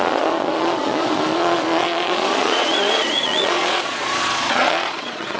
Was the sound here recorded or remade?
remade